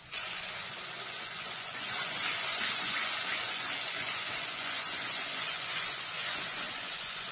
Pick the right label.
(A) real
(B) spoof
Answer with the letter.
B